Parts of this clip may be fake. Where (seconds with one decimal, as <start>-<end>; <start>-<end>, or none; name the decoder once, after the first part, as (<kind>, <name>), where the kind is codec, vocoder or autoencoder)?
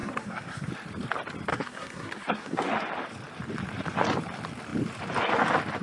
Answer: 0.0-0.7 (codec, SNAC); 1.5-2.7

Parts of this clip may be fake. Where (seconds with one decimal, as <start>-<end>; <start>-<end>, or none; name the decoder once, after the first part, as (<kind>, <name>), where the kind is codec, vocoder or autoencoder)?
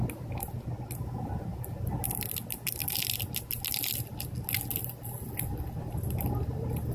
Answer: none